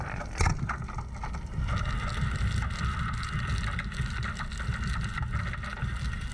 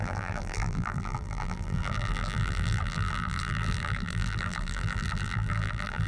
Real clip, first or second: first